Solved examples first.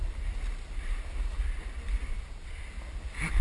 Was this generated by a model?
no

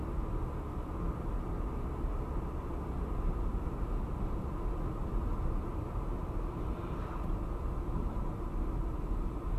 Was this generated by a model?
no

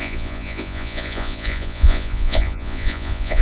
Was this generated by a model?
yes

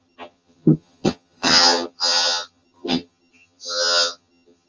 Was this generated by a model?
yes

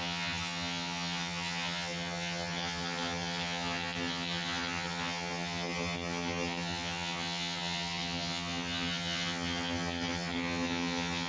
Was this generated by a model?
yes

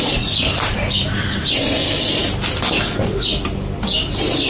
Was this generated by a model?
no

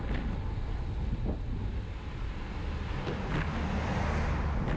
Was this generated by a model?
no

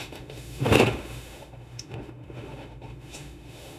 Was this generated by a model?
yes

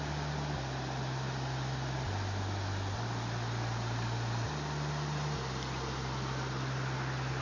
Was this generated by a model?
no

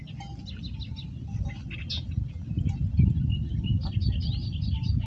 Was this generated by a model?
no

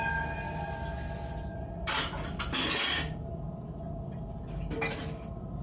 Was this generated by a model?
no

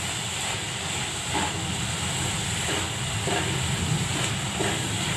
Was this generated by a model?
no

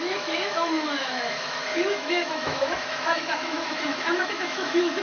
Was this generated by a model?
yes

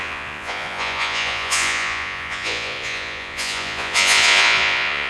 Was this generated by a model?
yes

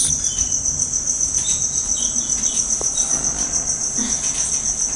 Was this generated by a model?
no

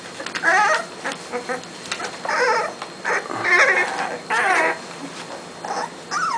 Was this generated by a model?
no